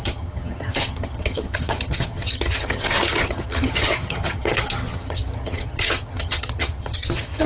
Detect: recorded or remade remade